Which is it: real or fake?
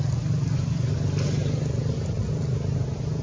real